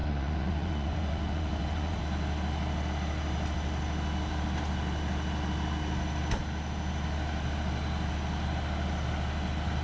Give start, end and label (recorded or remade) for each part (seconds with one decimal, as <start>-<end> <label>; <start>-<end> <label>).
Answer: 0.0-2.0 remade; 2.0-9.8 recorded